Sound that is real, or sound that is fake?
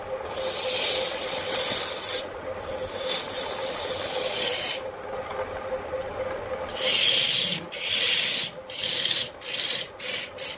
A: real